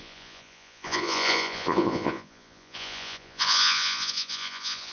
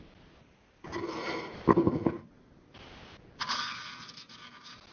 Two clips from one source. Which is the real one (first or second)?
second